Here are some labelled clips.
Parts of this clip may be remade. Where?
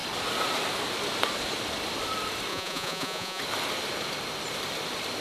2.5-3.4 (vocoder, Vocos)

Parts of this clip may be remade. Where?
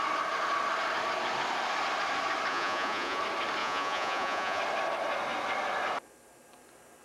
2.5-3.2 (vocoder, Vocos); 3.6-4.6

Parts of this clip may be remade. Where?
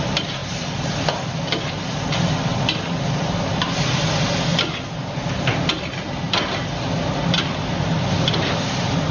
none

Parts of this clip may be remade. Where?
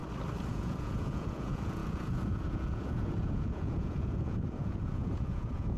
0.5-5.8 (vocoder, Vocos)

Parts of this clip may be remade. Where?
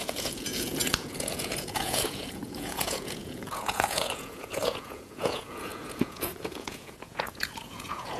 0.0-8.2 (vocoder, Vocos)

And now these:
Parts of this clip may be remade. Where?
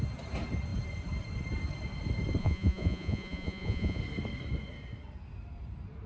2.4-4.0 (vocoder, Vocos)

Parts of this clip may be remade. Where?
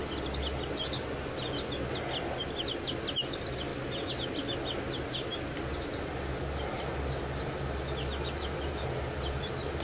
none